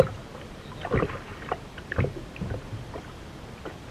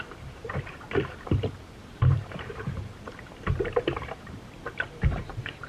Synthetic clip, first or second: second